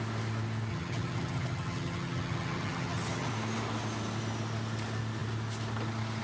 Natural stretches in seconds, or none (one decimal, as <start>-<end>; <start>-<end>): 0.0-0.7; 3.3-6.2